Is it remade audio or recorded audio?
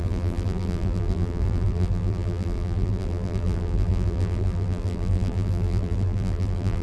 remade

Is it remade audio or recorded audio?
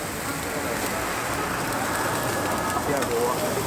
recorded